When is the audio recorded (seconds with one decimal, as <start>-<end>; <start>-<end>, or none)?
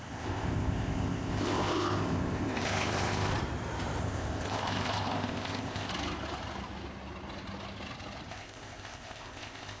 3.3-4.0; 5.9-8.3